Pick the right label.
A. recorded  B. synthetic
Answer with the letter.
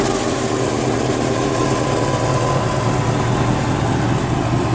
A